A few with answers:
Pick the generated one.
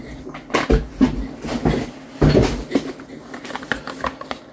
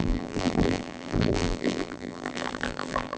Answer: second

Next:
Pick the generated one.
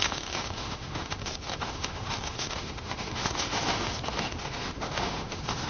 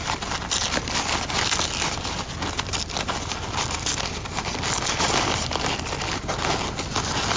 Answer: first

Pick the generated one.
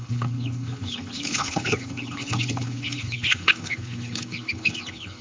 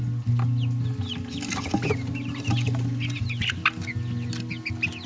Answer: first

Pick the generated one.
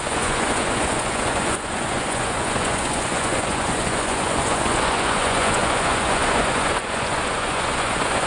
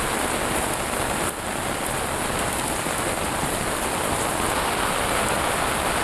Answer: first